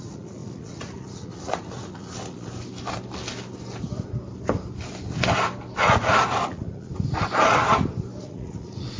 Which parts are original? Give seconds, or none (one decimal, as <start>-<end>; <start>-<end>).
2.5-6.4; 6.9-8.2